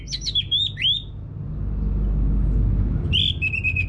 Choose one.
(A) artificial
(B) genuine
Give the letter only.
B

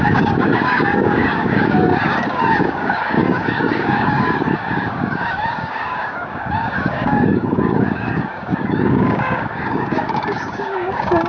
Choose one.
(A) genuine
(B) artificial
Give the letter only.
B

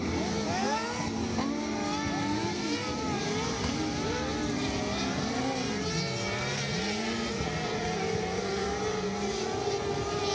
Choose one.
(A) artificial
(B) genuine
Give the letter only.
B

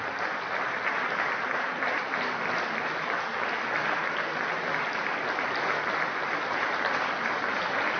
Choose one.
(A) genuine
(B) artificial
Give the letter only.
A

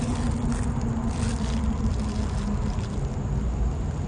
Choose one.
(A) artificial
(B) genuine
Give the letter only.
B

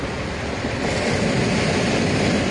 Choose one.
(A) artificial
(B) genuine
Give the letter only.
B